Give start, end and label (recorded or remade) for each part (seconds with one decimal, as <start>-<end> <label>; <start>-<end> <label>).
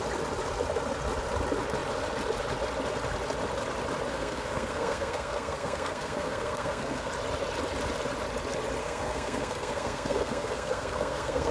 0.0-4.1 recorded; 4.1-7.1 remade; 7.1-8.8 recorded; 8.8-11.5 remade